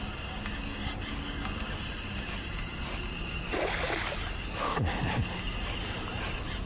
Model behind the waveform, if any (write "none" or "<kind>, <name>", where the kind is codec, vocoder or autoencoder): none